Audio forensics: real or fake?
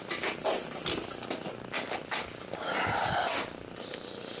real